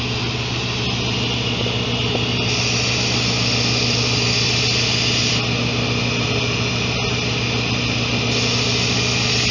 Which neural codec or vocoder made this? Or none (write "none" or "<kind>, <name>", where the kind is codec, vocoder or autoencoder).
none